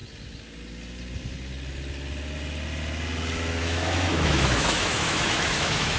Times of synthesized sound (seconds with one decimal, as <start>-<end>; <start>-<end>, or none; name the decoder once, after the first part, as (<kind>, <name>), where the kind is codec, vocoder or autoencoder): 3.6-6.0 (autoencoder, DAC-VAE)